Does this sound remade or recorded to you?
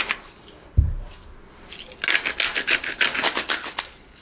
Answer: recorded